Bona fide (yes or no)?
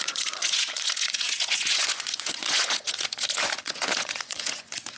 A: no